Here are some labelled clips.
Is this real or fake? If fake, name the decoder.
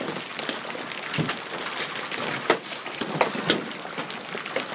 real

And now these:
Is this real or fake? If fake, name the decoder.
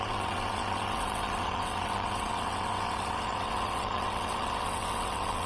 fake, vocoder, WaveNeXt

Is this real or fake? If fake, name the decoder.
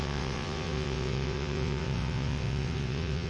fake, vocoder, WaveNeXt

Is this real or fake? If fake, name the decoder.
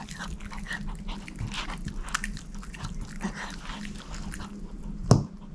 real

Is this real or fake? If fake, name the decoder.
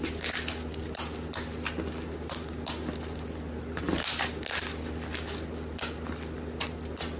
real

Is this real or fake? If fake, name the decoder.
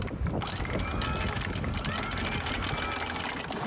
real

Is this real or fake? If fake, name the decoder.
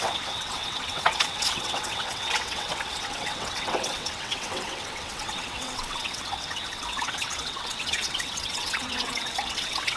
fake, vocoder, WaveNeXt